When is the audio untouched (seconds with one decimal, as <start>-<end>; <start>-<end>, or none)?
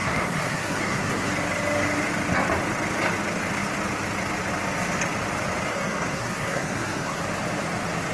1.3-5.7; 7.2-8.1